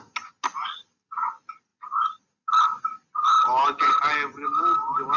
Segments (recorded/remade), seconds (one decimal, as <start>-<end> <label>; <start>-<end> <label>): 0.0-5.2 recorded